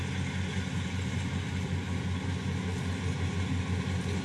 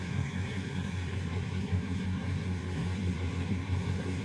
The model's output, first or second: second